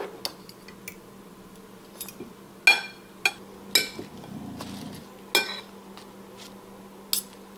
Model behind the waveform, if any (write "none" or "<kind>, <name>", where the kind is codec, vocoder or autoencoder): none